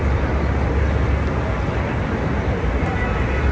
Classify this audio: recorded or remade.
recorded